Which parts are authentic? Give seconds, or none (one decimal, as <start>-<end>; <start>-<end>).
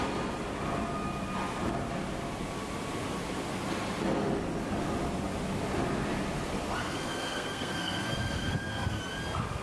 0.0-6.8; 9.0-9.6